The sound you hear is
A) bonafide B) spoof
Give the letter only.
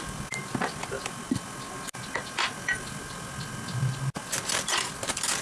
A